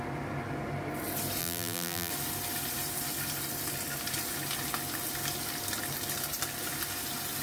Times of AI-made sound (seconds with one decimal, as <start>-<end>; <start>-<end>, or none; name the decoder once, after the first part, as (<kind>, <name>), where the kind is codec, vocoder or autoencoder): 1.4-2.1 (vocoder, BigVGAN v2)